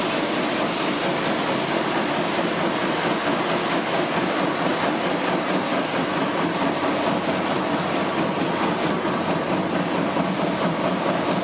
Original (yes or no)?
yes